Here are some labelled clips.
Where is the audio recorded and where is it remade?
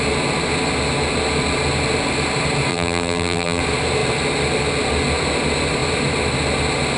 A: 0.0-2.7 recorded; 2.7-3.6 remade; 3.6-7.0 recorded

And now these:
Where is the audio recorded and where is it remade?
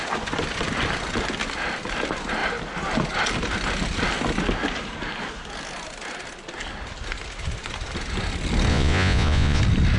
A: 0.0-8.7 recorded; 8.7-9.6 remade; 9.6-10.0 recorded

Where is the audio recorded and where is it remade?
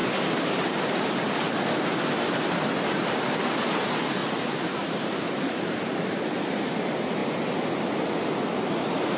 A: 0.0-1.0 remade; 1.0-4.2 recorded; 4.2-5.3 remade; 5.3-9.2 recorded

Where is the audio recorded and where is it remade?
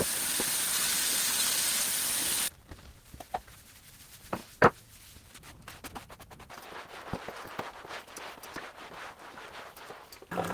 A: 0.0-0.9 remade; 0.9-2.1 recorded; 2.1-4.4 remade; 4.4-8.2 recorded; 8.2-10.5 remade